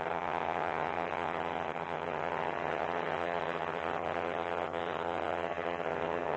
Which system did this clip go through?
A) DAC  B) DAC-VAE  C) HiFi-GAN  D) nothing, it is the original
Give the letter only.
C